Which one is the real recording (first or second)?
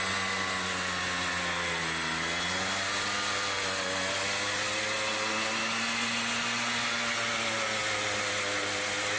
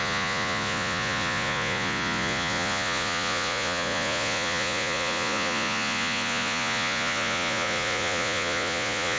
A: first